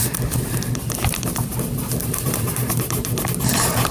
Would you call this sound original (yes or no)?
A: no